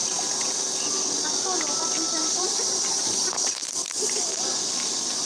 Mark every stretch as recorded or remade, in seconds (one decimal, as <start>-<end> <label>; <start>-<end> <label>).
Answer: 0.0-2.2 recorded; 2.2-3.3 remade; 3.3-5.3 recorded